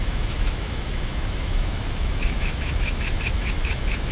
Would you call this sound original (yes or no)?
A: no